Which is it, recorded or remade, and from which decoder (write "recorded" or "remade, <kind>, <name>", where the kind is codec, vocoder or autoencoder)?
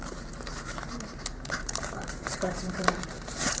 remade, vocoder, BigVGAN v2